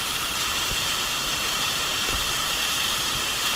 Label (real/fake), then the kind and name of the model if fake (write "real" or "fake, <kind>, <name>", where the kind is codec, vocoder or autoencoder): fake, vocoder, BigVGAN v2